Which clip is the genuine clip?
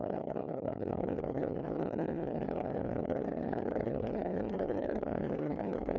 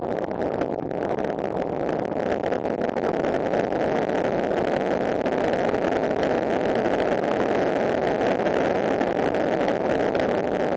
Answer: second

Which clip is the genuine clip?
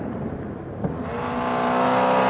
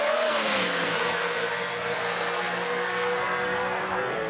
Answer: first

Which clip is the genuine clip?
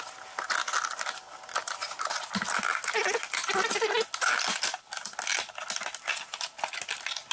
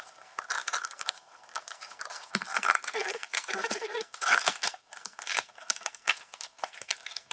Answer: first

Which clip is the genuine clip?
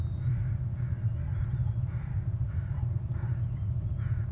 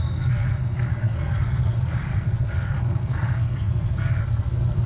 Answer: first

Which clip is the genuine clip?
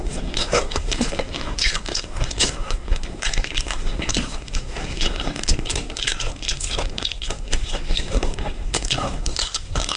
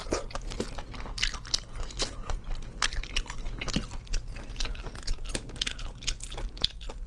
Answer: second